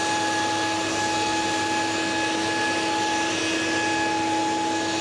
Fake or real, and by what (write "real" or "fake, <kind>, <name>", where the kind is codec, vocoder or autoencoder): real